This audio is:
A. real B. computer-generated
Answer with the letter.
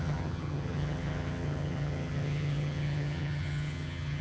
B